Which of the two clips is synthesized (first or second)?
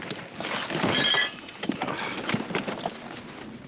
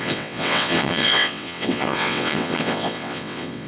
second